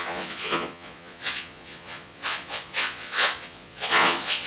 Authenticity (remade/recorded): remade